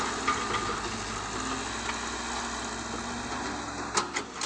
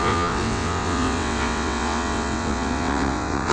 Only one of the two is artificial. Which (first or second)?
second